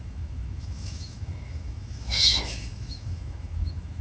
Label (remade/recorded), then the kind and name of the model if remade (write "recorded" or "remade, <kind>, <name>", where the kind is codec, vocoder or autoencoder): remade, autoencoder, DAC-VAE